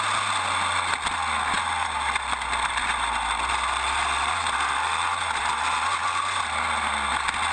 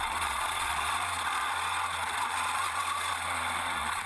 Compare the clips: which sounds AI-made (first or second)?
second